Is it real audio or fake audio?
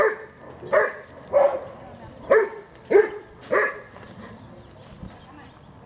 real